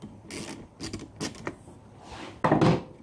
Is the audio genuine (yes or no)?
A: yes